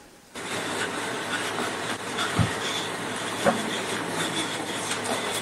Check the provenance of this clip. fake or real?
fake